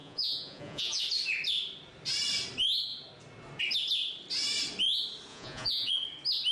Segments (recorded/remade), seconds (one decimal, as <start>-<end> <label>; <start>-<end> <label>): 0.0-1.0 remade; 1.0-5.3 recorded; 5.3-5.9 remade; 5.9-6.5 recorded

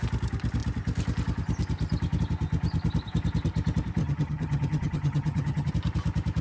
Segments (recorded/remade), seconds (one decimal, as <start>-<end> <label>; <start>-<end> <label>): 0.0-4.0 recorded; 4.0-5.7 remade; 5.7-6.4 recorded

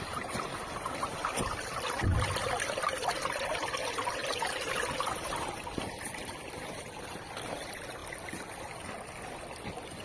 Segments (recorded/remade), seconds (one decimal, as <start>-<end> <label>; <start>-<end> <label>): 0.0-10.0 recorded

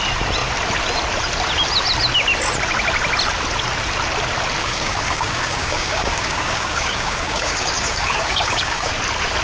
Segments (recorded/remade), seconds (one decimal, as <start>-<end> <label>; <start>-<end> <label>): 0.0-4.6 recorded; 4.6-8.9 remade; 8.9-9.4 recorded